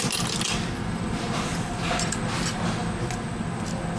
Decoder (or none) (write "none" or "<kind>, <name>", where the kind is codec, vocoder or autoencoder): none